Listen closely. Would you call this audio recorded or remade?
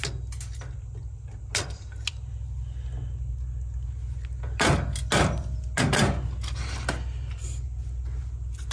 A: recorded